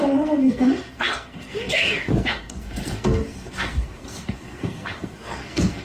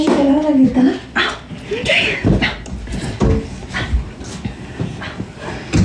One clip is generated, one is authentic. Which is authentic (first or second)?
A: second